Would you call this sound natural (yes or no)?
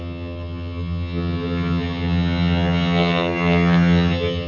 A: no